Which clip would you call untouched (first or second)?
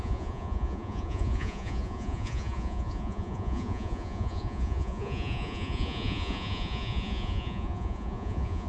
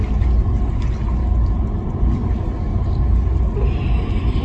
second